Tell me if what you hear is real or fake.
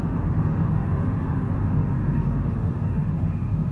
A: fake